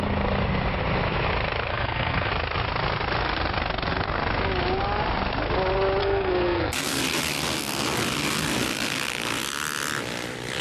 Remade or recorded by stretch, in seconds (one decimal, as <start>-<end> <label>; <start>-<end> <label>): 0.0-1.7 recorded; 1.7-2.3 remade; 2.3-6.0 recorded; 6.0-7.0 remade; 7.0-10.6 recorded